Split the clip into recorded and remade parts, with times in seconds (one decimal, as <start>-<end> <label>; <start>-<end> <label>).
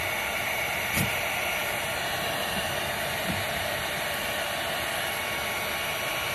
0.0-6.3 recorded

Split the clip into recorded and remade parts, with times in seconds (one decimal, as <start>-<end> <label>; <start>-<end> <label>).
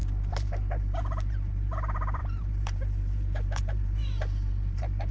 0.0-5.1 remade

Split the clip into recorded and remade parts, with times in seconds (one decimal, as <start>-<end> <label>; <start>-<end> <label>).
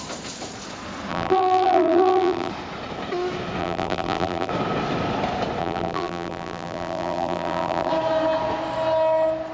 0.0-1.1 recorded; 1.1-2.5 remade; 2.5-3.6 recorded; 3.6-4.5 remade; 4.5-5.6 recorded; 5.6-7.9 remade; 7.9-9.5 recorded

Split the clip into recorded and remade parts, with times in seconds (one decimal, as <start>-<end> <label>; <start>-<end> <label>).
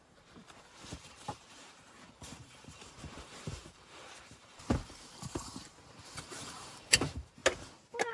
0.0-7.4 remade; 7.4-8.1 recorded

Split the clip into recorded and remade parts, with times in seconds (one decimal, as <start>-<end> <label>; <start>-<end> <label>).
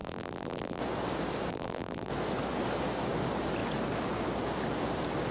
0.0-0.8 remade; 0.8-1.5 recorded; 1.5-2.1 remade; 2.1-5.3 recorded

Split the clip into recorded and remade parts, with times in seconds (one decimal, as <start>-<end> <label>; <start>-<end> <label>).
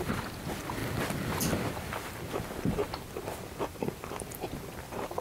0.0-0.8 remade; 0.8-2.3 recorded; 2.3-2.8 remade; 2.8-3.6 recorded; 3.6-5.2 remade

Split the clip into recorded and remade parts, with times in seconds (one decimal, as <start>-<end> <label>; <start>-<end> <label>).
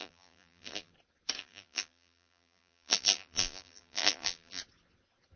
0.0-0.9 remade; 0.9-1.4 recorded; 1.4-4.6 remade; 4.6-5.4 recorded